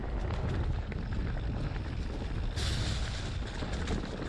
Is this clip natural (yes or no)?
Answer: yes